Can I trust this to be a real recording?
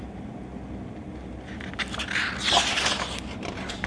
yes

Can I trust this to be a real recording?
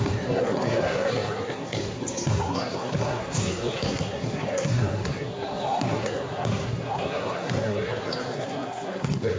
no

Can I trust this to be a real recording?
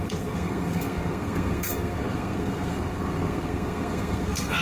no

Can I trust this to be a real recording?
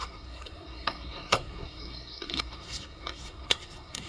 no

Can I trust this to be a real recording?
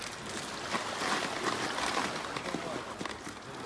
yes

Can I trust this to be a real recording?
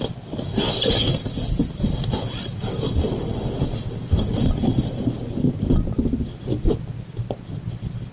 yes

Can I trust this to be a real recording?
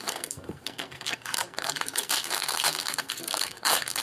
no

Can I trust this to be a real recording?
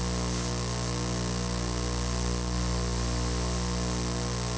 yes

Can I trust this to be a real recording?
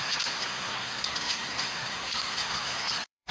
no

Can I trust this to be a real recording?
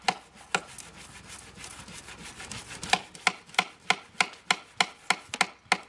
yes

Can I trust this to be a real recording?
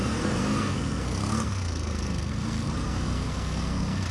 no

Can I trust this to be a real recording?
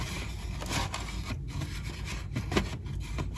yes